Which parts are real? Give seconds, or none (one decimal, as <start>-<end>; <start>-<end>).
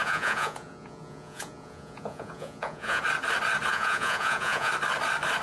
3.0-3.7; 4.7-5.4